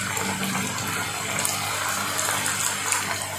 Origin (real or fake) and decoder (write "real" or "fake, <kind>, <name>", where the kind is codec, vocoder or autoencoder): real